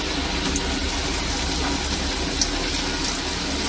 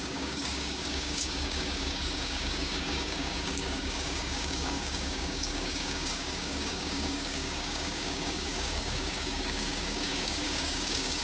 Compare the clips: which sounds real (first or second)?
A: first